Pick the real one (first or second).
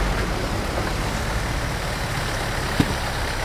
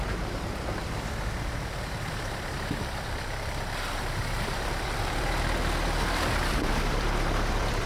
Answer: first